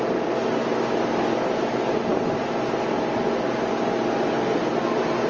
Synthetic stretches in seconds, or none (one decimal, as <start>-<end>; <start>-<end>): none